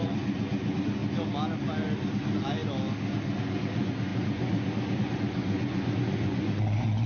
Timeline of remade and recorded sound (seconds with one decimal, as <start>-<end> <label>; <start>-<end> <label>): 0.0-1.0 remade; 1.0-3.4 recorded; 3.4-7.1 remade